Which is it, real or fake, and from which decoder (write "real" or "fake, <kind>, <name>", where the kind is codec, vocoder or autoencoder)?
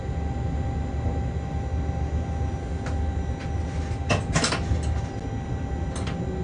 real